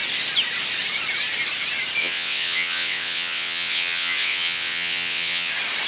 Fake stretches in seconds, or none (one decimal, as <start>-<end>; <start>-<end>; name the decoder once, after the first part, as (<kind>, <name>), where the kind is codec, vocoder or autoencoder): 2.0-5.5 (vocoder, WaveNeXt)